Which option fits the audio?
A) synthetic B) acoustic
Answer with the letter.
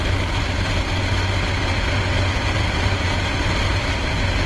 B